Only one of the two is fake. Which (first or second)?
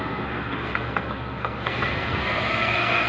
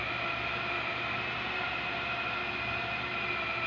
first